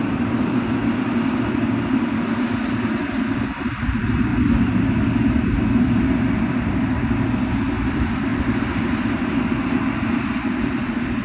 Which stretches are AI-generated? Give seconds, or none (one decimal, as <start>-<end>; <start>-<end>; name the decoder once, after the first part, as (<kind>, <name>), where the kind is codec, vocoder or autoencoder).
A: 0.0-4.3 (vocoder, BigVGAN v2); 5.8-8.3; 8.8-11.2